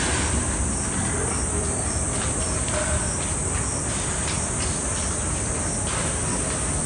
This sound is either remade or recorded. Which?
recorded